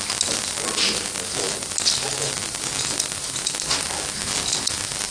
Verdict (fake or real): real